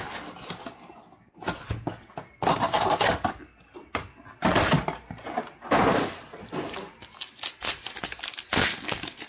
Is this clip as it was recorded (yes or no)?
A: yes